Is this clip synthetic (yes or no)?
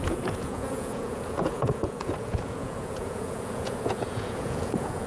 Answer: yes